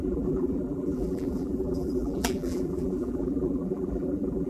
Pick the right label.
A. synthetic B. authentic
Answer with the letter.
A